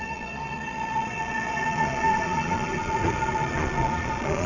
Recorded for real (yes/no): no